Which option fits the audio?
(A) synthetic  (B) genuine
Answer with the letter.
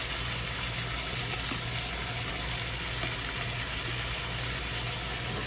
B